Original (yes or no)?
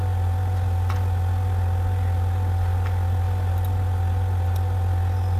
yes